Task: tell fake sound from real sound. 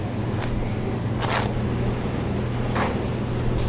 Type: real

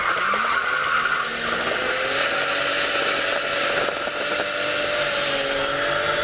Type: real